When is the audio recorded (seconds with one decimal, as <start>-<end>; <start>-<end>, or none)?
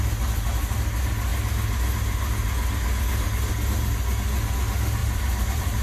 0.0-5.0